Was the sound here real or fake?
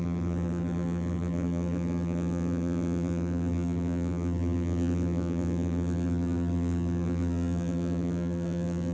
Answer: fake